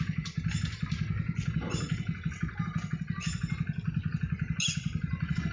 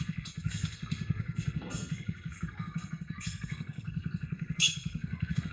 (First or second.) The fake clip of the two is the second